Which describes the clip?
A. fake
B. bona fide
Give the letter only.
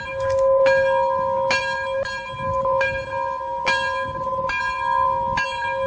B